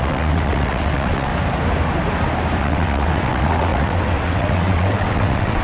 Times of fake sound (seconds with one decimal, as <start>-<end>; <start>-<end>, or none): 0.0-1.3; 2.6-5.6